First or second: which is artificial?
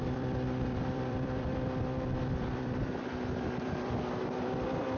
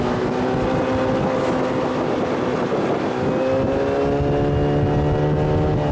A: first